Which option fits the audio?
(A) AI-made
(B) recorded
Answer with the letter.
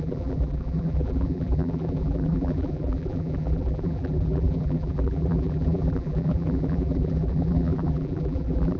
A